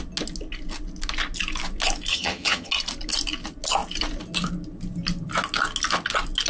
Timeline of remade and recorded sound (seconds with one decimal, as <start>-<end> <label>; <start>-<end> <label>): 0.0-2.1 recorded; 2.1-2.7 remade; 2.7-6.5 recorded